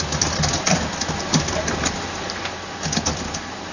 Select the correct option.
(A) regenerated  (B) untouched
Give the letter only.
B